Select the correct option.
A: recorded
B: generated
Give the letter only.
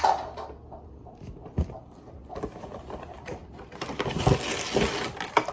A